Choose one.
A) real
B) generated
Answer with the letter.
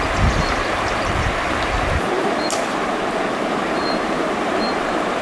B